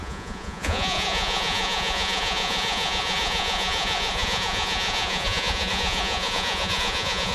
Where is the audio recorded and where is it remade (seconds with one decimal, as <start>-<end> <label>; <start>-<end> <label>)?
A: 0.0-7.3 remade